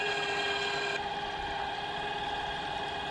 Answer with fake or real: real